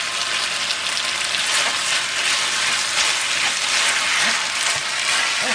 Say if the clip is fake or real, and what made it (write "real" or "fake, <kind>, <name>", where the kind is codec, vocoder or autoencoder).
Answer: real